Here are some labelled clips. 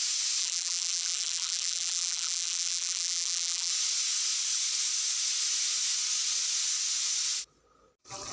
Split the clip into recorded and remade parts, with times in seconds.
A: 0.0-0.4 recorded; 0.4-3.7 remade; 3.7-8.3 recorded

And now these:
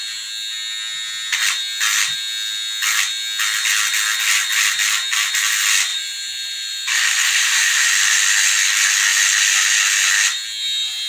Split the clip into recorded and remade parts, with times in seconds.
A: 0.0-5.9 recorded; 5.9-7.9 remade; 7.9-11.1 recorded

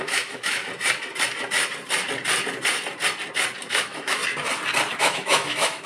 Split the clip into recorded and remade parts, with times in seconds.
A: 0.0-0.6 remade; 0.6-3.7 recorded; 3.7-4.2 remade; 4.2-5.0 recorded; 5.0-5.9 remade